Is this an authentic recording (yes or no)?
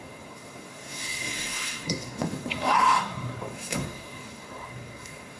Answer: no